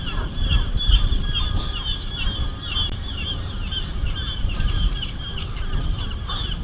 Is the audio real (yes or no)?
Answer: no